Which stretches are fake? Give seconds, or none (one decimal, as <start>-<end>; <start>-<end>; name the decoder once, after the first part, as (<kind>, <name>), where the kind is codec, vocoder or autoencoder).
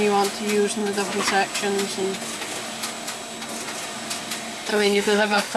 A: 4.7-5.6 (codec, SNAC)